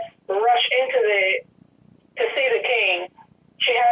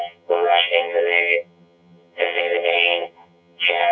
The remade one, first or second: second